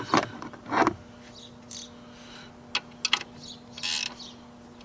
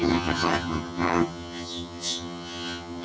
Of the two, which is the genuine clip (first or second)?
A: first